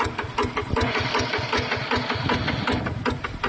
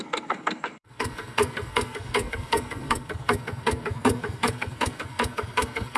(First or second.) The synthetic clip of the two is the second